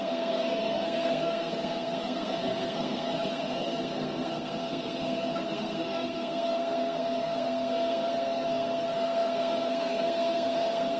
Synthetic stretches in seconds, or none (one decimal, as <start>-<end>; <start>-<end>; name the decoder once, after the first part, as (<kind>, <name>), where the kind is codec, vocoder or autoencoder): 0.0-11.0 (codec, SNAC)